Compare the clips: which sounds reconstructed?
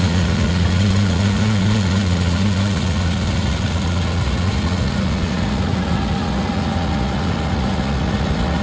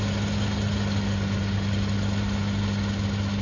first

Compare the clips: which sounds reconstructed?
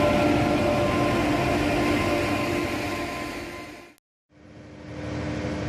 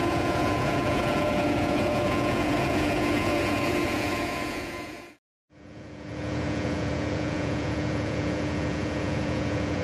second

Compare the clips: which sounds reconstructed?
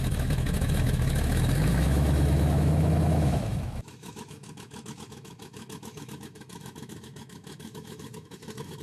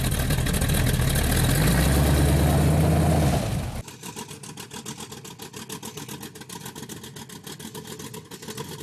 first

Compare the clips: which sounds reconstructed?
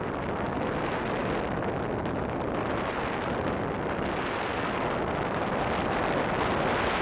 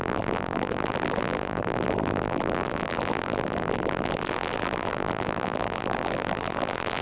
second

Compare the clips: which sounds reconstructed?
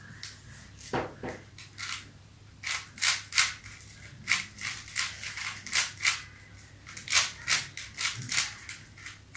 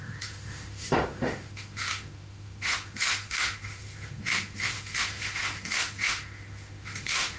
second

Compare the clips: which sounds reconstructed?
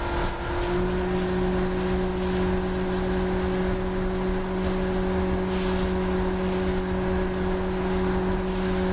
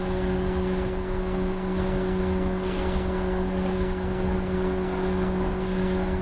second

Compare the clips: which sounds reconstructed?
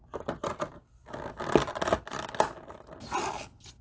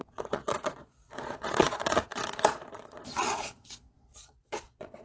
second